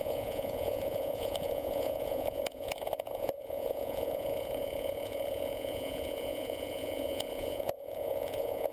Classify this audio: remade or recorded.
remade